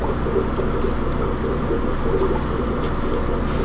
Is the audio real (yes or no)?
yes